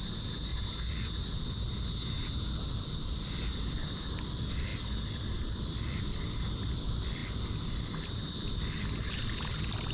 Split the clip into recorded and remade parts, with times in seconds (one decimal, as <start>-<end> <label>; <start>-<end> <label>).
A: 0.0-9.9 recorded